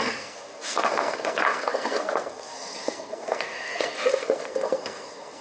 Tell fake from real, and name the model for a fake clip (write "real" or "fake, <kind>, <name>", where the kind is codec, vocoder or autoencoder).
fake, codec, SNAC